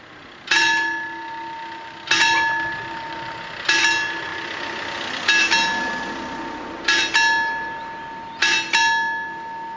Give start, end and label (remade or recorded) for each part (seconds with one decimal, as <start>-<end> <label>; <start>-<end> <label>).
0.0-9.8 recorded